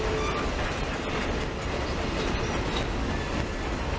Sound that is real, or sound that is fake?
real